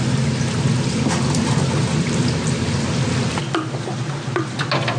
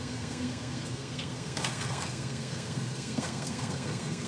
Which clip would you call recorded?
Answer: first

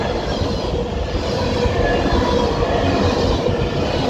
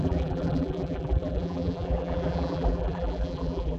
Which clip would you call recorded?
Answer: first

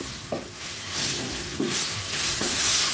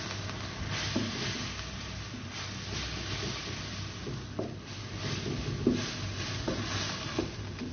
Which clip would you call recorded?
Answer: second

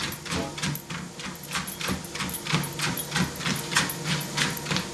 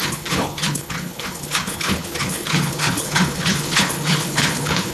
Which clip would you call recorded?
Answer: first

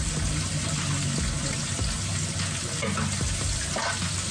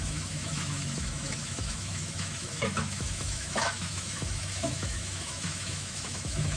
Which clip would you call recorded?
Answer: first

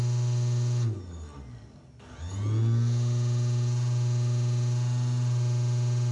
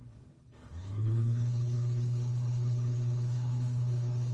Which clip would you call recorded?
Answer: first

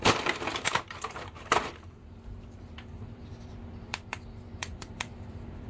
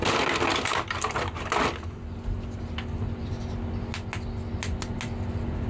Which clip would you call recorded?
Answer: second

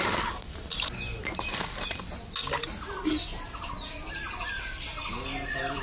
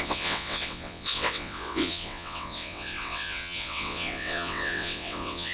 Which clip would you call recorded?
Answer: first